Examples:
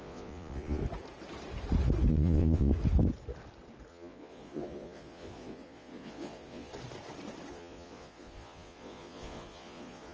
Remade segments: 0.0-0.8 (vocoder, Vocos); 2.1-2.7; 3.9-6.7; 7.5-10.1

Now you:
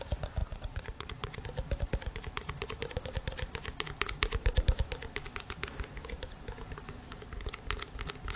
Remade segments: 0.4-1.4 (vocoder, WaveNeXt)